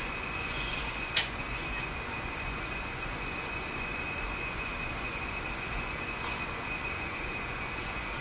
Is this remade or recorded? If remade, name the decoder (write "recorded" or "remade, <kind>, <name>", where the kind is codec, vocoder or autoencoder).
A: remade, vocoder, Vocos